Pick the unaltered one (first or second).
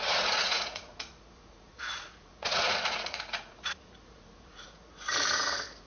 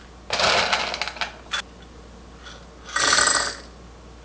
second